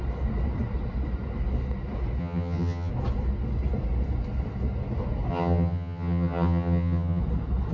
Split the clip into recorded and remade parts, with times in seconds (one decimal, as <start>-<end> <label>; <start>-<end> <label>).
0.0-2.2 recorded; 2.2-2.9 remade; 2.9-5.3 recorded; 5.3-7.2 remade; 7.2-7.7 recorded